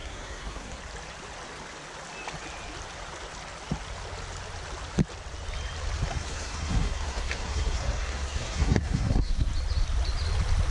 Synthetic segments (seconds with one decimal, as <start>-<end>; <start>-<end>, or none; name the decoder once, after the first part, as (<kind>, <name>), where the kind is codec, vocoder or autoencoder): 0.0-0.8 (codec, SNAC); 6.1-9.5